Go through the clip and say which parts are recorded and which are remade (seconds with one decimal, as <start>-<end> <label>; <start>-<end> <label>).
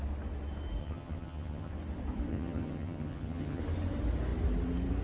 0.0-0.8 recorded; 0.8-1.7 remade; 1.7-2.3 recorded; 2.3-3.6 remade; 3.6-5.0 recorded